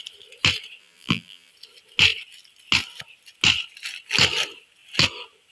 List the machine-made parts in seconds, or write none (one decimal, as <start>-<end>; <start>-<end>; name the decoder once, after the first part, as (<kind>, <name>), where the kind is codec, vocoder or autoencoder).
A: 0.8-1.5 (vocoder, BigVGAN v2)

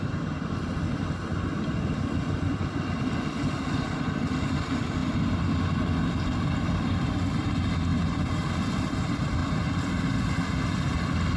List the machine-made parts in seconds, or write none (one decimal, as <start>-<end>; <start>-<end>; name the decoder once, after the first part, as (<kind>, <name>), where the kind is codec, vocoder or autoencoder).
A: none

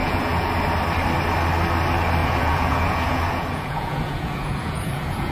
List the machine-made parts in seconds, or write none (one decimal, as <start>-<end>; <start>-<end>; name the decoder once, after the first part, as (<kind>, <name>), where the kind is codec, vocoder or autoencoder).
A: 0.0-0.5 (vocoder, Vocos); 2.2-5.3

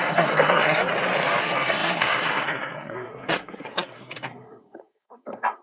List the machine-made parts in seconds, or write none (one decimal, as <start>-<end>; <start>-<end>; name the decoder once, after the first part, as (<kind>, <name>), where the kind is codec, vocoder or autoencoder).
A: 0.0-0.9 (codec, SNAC); 1.4-5.6